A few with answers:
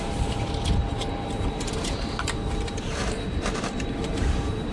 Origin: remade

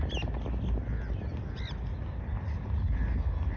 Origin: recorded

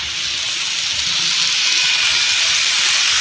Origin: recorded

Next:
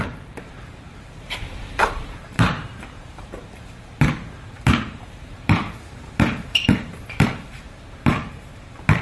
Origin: remade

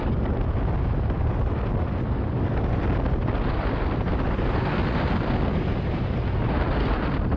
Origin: recorded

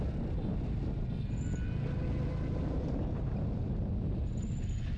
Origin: recorded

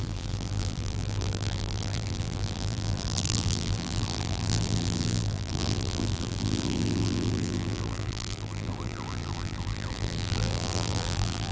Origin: remade